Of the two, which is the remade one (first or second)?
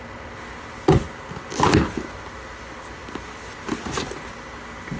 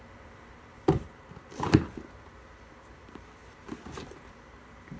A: second